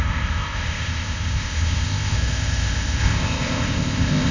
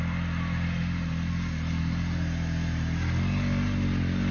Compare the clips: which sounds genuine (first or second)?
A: second